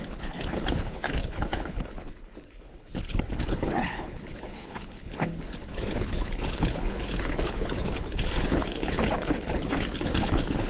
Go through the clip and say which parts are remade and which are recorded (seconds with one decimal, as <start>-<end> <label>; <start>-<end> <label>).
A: 0.0-10.7 remade